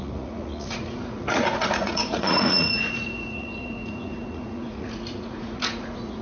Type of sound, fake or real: fake